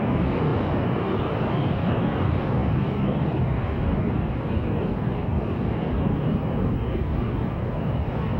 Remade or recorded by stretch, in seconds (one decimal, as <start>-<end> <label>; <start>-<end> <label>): 0.0-8.4 remade